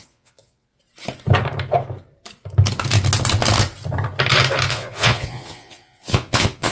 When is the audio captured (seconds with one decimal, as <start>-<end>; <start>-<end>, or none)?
0.7-4.7